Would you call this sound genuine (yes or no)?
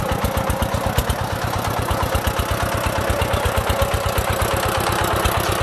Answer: yes